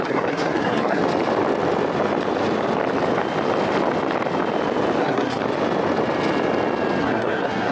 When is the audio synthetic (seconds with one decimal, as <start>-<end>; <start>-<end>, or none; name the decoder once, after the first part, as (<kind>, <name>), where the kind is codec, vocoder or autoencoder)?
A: 0.0-1.0 (codec, SNAC); 5.0-5.4; 7.0-7.7